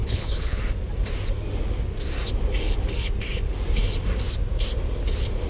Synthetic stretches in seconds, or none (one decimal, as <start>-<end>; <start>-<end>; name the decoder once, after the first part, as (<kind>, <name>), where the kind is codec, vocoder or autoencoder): 0.0-0.6 (codec, HILCodec)